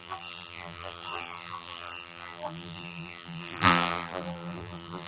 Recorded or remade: remade